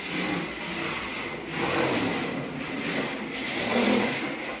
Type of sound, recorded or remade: recorded